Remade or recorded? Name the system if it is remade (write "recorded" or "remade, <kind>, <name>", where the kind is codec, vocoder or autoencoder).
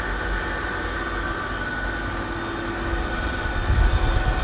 recorded